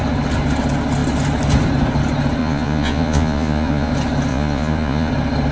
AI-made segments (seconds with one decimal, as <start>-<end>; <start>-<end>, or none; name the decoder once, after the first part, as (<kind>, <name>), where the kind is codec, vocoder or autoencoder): 2.4-3.9 (vocoder, Vocos); 4.3-5.1